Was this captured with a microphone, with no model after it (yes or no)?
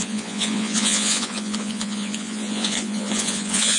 no